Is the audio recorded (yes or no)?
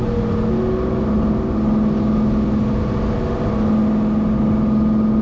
yes